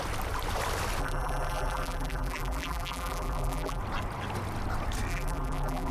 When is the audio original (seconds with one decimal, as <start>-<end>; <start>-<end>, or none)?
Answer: 0.0-1.0; 3.8-5.1